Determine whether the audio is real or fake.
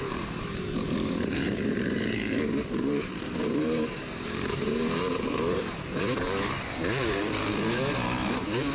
fake